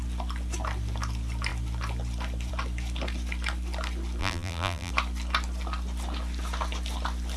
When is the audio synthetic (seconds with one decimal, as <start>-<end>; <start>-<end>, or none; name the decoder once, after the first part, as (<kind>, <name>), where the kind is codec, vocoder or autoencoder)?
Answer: 4.2-4.9 (vocoder, BigVGAN v2)